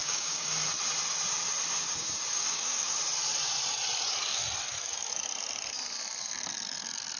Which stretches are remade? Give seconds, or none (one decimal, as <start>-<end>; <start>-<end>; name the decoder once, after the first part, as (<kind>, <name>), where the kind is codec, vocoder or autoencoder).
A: 0.0-0.5 (codec, DAC); 2.3-3.0